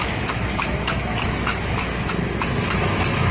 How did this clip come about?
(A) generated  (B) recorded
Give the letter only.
A